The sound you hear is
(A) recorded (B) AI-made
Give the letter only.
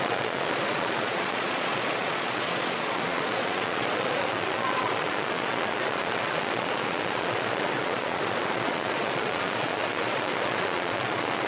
B